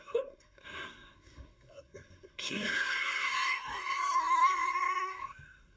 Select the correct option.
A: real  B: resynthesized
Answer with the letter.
B